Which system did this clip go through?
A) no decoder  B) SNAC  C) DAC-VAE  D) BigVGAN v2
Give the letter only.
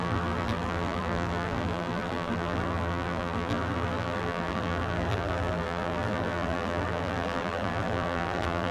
D